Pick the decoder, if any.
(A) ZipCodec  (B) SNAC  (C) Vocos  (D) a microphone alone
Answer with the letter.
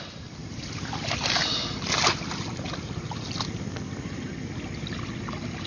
D